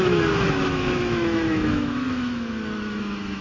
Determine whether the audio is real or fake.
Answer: fake